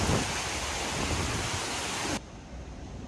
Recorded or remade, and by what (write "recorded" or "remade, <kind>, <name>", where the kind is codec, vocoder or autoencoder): recorded